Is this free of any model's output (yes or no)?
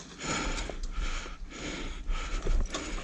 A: yes